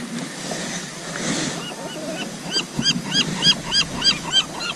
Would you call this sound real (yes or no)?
yes